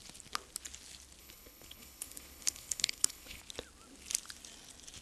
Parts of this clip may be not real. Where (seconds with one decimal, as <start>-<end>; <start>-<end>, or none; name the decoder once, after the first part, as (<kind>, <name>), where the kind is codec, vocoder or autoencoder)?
1.2-3.4 (codec, HILCodec)